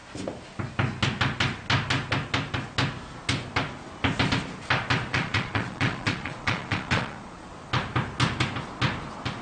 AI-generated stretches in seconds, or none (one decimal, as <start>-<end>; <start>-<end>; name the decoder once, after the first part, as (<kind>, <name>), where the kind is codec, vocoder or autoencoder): 5.1-7.5 (vocoder, Vocos)